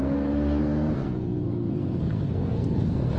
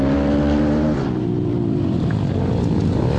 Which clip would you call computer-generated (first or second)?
first